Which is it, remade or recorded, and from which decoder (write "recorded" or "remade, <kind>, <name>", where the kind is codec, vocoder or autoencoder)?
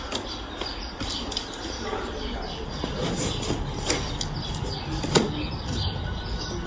recorded